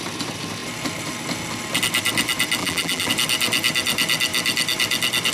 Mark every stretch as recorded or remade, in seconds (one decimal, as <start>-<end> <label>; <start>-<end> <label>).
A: 0.0-2.6 recorded; 2.6-3.1 remade; 3.1-5.3 recorded